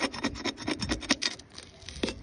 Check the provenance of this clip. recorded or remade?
recorded